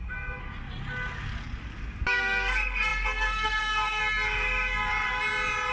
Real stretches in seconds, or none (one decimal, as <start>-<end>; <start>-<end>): 0.4-2.2; 4.0-5.7